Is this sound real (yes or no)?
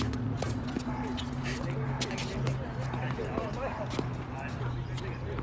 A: yes